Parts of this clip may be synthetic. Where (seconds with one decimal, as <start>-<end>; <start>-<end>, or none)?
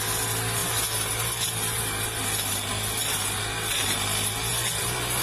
none